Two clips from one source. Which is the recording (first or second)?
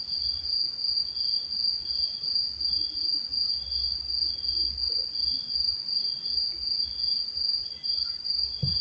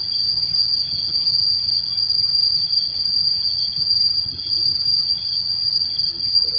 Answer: first